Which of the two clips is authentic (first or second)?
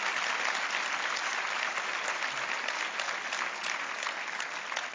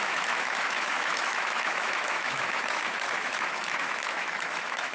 first